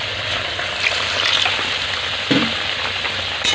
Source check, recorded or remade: recorded